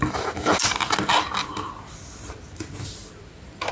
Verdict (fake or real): real